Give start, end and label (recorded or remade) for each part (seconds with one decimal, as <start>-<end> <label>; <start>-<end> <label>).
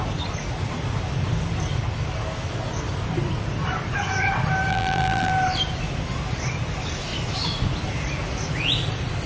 0.0-4.7 recorded; 4.7-5.3 remade; 5.3-9.3 recorded